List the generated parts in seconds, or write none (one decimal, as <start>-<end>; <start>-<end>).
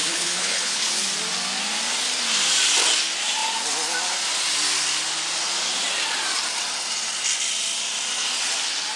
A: 0.0-0.9